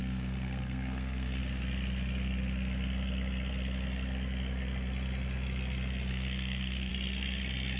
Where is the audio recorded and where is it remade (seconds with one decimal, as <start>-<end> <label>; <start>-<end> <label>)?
0.0-1.4 remade; 1.4-6.1 recorded; 6.1-6.9 remade; 6.9-7.8 recorded